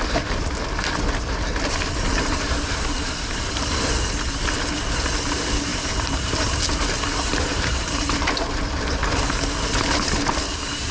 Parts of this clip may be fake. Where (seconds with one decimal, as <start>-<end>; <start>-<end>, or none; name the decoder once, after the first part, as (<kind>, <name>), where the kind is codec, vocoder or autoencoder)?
2.0-3.9 (vocoder, BigVGAN v2); 5.7-9.2